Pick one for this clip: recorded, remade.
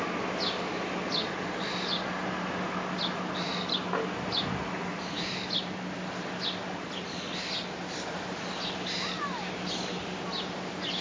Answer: recorded